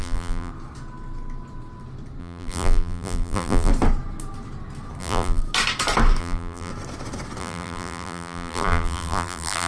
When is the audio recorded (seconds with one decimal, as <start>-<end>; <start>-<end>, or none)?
0.5-2.2; 3.7-5.0; 5.4-6.2; 6.7-7.4